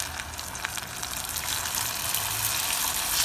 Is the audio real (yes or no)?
yes